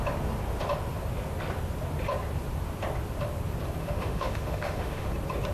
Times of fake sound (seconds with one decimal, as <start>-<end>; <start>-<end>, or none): 3.8-5.1